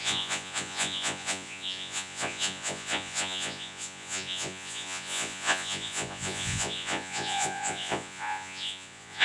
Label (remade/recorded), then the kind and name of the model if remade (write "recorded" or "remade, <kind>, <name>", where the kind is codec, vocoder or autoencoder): remade, vocoder, Vocos